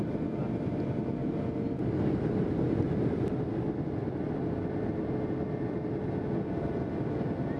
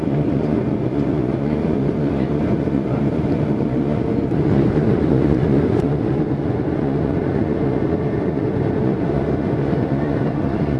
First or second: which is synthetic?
second